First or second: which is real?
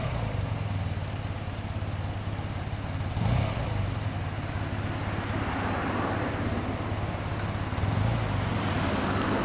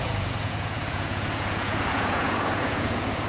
first